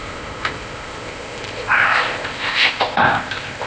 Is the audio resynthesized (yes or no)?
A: yes